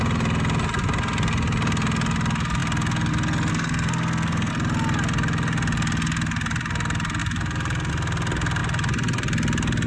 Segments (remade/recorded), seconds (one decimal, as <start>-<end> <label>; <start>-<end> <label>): 0.0-3.5 recorded; 3.5-4.5 remade; 4.5-9.9 recorded